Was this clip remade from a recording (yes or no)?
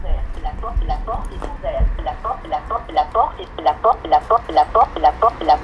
no